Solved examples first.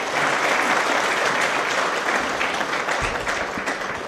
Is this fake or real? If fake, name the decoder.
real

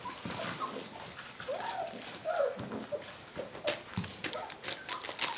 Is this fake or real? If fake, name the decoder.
real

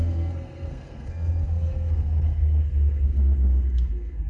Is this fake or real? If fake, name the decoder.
fake, codec, SNAC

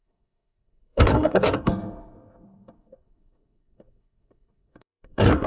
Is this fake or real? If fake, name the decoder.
fake, codec, SNAC